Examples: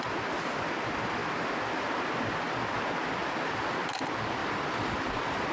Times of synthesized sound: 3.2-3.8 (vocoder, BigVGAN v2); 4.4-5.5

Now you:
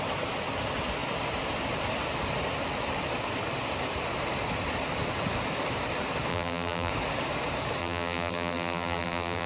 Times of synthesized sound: 6.3-6.9 (vocoder, BigVGAN v2); 7.8-9.5

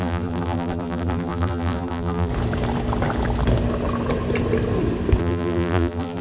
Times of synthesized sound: 0.0-2.3 (vocoder, BigVGAN v2); 5.2-6.2

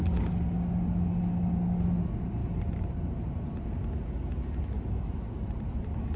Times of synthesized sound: 2.4-3.7 (vocoder, BigVGAN v2)

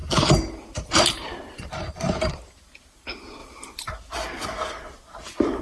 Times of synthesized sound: 0.0-2.3 (vocoder, BigVGAN v2); 3.4-3.9

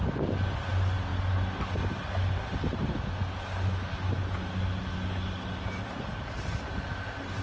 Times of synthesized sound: none

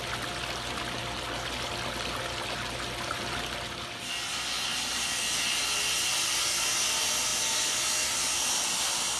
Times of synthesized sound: none

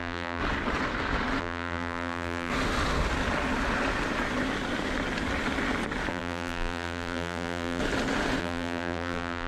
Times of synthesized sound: 0.0-0.4 (vocoder, BigVGAN v2); 1.4-2.5; 6.1-7.8; 8.4-9.5